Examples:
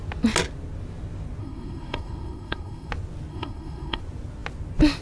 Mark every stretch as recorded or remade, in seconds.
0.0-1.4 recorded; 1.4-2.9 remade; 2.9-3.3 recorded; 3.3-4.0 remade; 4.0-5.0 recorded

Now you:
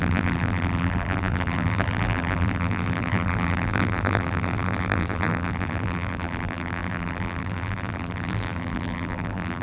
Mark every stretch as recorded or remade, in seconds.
0.0-9.6 remade

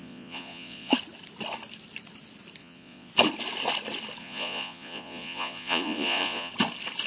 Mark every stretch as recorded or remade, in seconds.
0.0-0.9 remade; 0.9-2.6 recorded; 2.6-3.1 remade; 3.1-4.2 recorded; 4.2-6.5 remade; 6.5-7.1 recorded

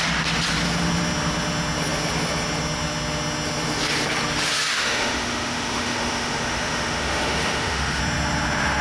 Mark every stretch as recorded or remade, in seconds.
0.0-4.7 recorded; 4.7-8.0 remade; 8.0-8.8 recorded

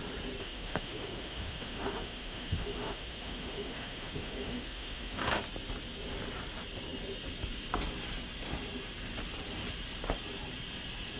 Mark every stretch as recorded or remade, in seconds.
0.0-0.4 recorded; 0.4-5.4 remade; 5.4-11.2 recorded

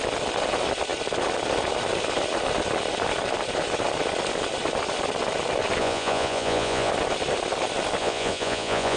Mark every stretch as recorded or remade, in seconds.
0.0-5.8 recorded; 5.8-6.9 remade; 6.9-8.0 recorded; 8.0-9.0 remade

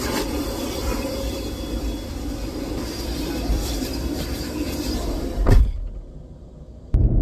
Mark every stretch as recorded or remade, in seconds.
0.0-0.8 remade; 0.8-2.1 recorded; 2.1-7.2 remade